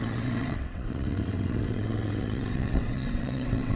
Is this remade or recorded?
remade